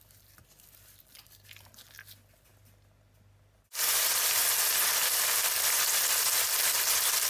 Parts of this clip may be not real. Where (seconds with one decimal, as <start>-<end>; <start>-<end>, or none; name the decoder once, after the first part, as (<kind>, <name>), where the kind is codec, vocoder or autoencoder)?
none